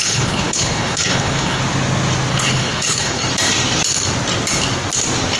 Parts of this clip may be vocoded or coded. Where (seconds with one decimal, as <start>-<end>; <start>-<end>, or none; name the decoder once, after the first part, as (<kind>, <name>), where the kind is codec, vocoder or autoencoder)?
0.0-1.6 (codec, HILCodec); 2.3-3.2